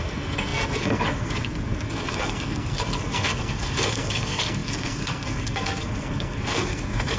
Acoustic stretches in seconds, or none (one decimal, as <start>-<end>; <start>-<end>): none